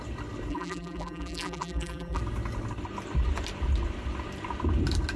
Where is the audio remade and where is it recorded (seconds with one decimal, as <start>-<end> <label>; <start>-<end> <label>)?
0.0-0.5 recorded; 0.5-2.2 remade; 2.2-5.2 recorded